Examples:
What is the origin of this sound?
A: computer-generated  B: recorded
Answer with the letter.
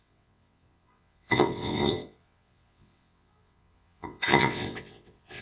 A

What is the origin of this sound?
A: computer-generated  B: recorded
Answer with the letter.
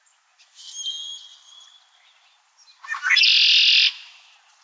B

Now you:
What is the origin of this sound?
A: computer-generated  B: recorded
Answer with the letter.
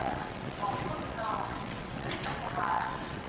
A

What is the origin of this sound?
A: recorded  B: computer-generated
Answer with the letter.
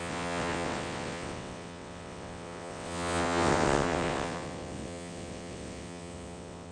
B